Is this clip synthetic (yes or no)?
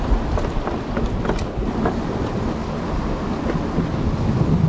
no